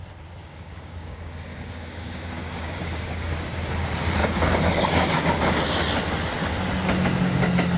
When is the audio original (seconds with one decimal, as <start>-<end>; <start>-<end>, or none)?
0.0-0.4; 3.5-4.2; 5.6-7.8